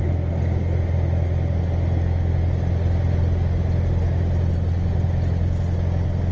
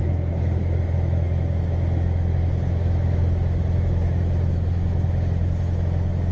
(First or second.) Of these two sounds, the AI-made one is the second